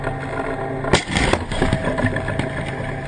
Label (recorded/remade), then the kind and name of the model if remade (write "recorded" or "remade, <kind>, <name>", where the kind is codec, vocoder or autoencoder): recorded